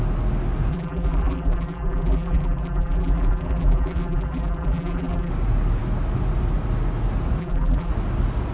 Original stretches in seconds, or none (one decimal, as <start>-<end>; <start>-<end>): 0.0-0.7; 5.3-7.4; 7.9-8.5